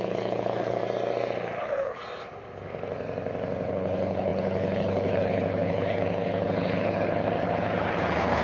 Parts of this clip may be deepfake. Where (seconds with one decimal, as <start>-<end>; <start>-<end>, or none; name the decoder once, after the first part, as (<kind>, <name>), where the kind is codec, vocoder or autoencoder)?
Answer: 0.0-0.8 (codec, HILCodec); 1.6-2.0; 3.7-8.4